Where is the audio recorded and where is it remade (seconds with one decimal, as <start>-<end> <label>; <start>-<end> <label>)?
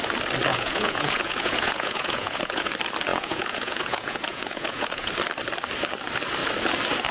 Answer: 0.0-0.5 recorded; 0.5-2.7 remade; 2.7-3.1 recorded; 3.1-5.1 remade; 5.1-7.1 recorded